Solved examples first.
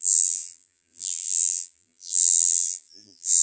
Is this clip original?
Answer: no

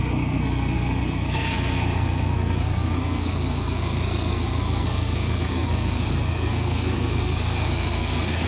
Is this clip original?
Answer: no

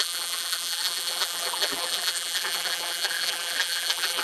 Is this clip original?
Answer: no